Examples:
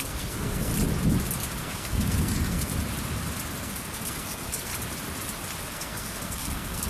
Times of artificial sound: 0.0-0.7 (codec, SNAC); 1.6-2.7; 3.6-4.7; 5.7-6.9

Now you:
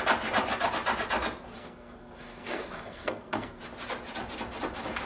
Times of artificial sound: 1.5-3.6 (codec, SNAC)

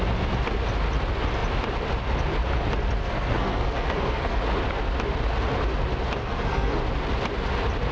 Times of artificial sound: 3.0-4.4 (codec, SNAC); 6.2-6.8

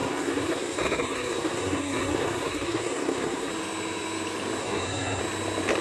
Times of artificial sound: 0.0-3.5 (codec, SNAC); 4.6-5.2

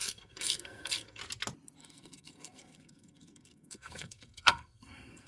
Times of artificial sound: 0.0-1.2 (codec, SNAC); 1.8-5.3

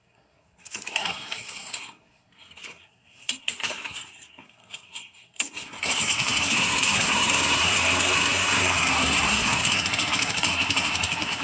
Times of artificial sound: 0.0-11.4 (codec, SNAC)

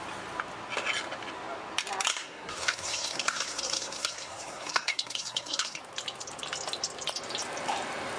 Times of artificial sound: 2.1-5.8 (codec, SNAC)

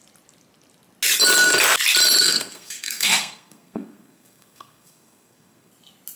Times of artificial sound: 2.2-5.7 (codec, SNAC)